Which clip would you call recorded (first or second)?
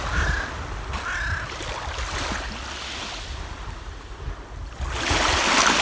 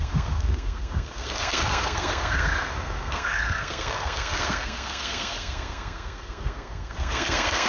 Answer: first